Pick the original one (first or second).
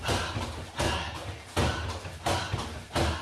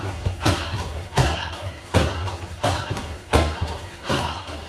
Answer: first